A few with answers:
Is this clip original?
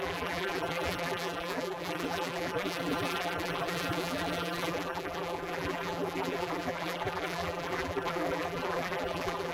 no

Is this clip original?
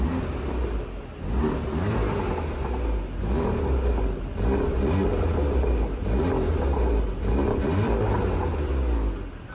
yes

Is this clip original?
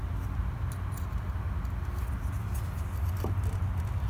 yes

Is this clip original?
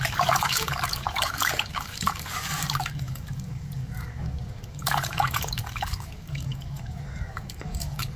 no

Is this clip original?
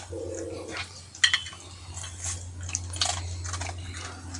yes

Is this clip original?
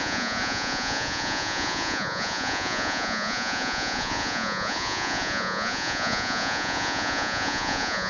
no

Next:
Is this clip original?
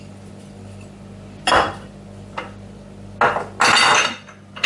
yes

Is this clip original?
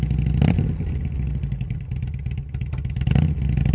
yes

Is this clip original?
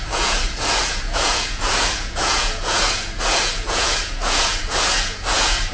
no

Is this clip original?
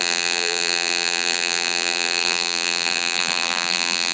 no